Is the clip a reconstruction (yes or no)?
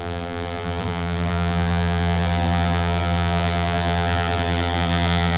yes